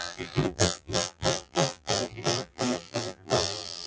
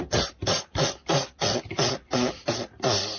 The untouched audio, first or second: second